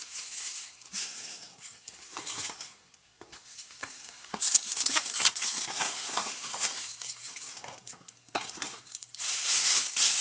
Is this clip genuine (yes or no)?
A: no